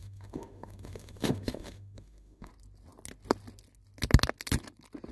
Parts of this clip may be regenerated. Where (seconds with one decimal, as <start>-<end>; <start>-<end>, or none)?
0.0-2.5